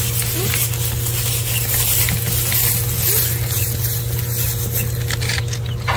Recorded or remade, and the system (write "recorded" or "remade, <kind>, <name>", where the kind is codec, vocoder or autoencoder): recorded